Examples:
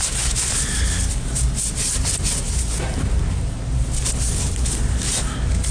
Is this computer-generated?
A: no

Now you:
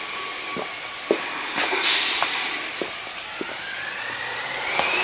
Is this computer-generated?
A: no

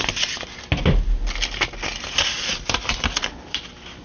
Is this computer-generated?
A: no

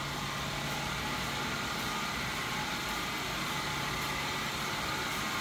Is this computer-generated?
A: no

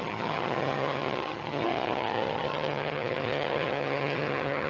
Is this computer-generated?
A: yes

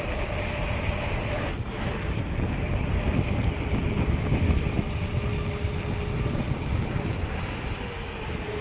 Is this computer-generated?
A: no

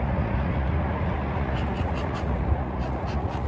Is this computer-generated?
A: yes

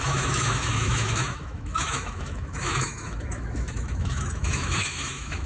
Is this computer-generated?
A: yes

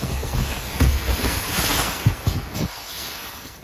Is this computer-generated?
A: yes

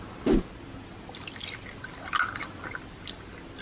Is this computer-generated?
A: no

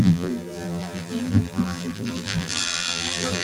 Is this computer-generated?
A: yes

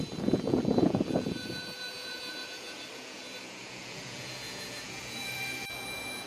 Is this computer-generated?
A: yes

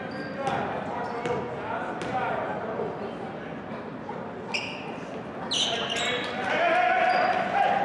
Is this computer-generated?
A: no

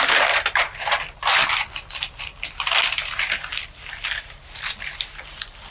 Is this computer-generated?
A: no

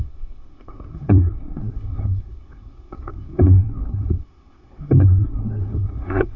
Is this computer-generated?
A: yes